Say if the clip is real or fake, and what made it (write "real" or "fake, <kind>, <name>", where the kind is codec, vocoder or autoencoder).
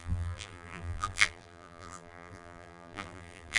fake, vocoder, BigVGAN v2